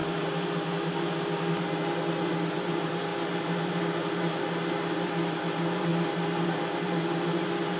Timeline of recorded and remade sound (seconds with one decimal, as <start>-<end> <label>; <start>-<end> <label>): 0.0-7.8 recorded